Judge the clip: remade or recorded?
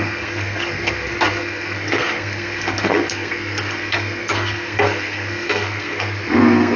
remade